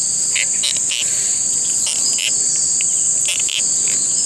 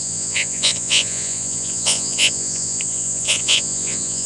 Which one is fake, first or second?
second